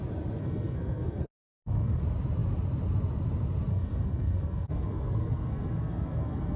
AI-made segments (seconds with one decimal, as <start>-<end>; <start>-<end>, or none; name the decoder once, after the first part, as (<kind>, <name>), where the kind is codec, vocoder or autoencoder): 0.4-2.0 (codec, SNAC); 3.7-6.6